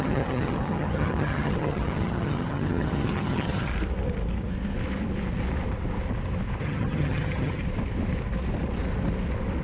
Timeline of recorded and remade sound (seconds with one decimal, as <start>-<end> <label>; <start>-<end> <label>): 0.0-3.7 remade; 3.7-6.6 recorded; 6.6-7.6 remade; 7.6-9.6 recorded